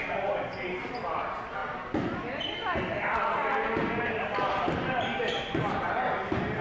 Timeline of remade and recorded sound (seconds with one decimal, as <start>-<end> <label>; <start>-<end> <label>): 0.0-6.6 recorded

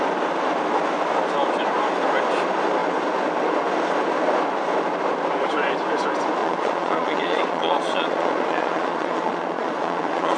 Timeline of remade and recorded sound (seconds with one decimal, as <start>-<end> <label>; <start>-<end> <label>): 0.0-6.4 recorded; 6.4-10.4 remade

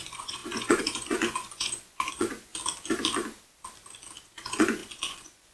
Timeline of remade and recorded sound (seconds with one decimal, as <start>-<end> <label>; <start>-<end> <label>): 0.0-2.5 remade; 2.5-4.2 recorded; 4.2-5.5 remade

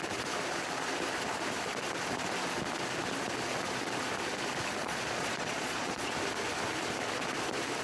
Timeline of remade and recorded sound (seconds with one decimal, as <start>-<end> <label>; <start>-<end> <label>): 0.0-4.8 recorded; 4.8-6.1 remade; 6.1-7.8 recorded